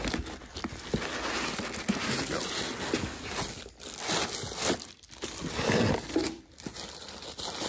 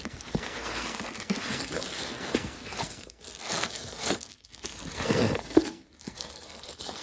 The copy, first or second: second